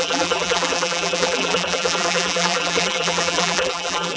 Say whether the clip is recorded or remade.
remade